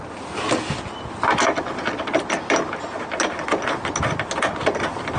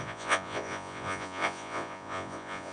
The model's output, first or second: second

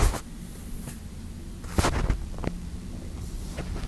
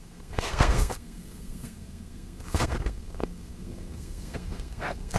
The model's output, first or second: second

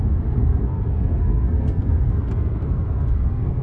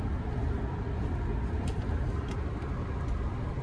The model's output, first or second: first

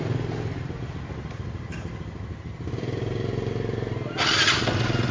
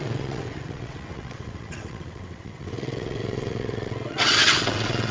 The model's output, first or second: second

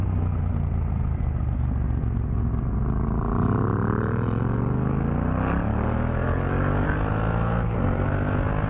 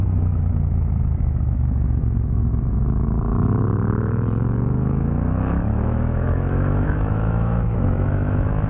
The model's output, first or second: second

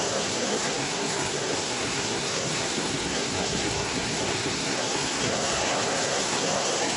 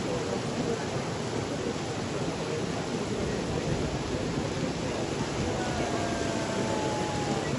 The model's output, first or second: first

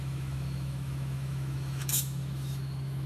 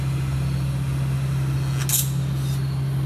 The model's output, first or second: first